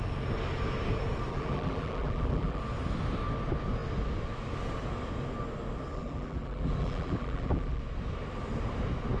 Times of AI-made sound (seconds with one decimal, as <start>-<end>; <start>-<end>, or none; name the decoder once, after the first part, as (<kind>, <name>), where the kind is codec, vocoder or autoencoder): 1.3-2.6 (vocoder, BigVGAN v2); 5.9-7.8